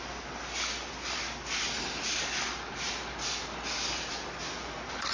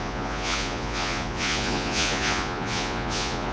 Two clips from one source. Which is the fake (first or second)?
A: second